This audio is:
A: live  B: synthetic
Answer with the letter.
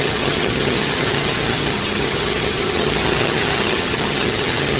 B